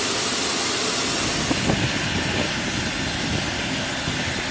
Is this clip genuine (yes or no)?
yes